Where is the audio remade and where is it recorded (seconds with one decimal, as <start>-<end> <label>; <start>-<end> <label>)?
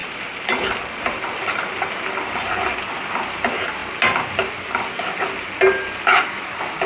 0.0-2.9 remade; 2.9-6.9 recorded